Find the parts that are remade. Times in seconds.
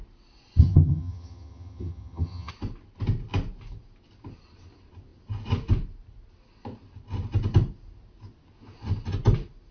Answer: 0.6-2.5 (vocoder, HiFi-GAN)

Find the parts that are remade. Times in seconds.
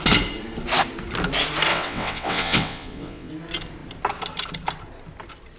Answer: 1.7-3.3 (vocoder, WaveNeXt)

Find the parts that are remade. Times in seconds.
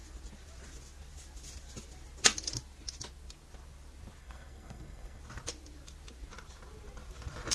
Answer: 4.2-5.2 (codec, SNAC)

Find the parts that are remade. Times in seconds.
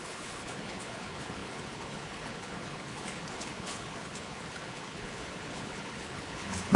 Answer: 0.0-6.8 (codec, HILCodec)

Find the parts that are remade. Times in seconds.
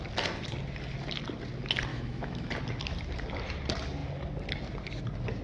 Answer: 1.9-2.5 (autoencoder, DAC-VAE)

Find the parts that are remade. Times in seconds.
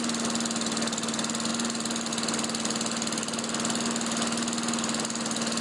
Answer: none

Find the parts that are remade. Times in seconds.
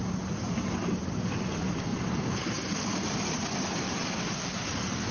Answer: none